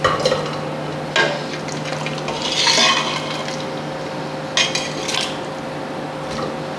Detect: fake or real real